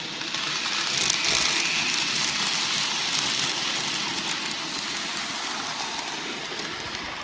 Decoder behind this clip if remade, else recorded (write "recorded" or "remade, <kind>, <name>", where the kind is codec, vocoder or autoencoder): recorded